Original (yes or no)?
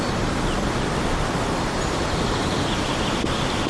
yes